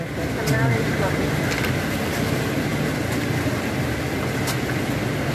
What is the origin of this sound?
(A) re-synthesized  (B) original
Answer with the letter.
B